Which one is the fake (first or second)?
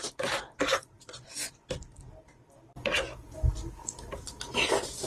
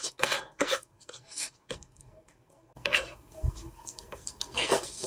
second